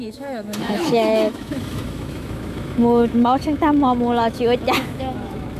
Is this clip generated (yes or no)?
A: yes